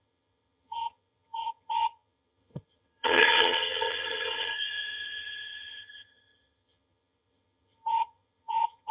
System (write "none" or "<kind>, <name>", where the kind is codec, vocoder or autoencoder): vocoder, HiFi-GAN